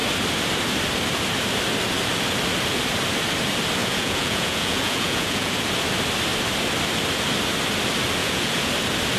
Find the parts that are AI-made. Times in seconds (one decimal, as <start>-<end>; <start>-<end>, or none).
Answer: 3.8-5.6; 8.2-8.7